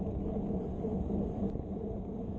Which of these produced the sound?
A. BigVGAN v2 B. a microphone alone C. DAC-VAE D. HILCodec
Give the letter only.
B